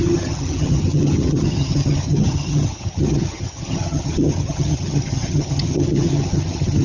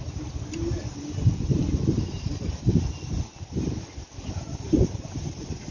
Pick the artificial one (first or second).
first